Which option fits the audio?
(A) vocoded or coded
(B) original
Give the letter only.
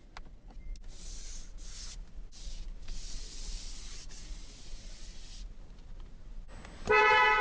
B